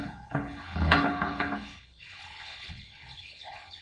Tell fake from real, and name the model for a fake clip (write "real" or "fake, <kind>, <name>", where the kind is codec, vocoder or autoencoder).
fake, codec, HILCodec